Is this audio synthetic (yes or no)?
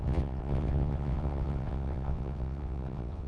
yes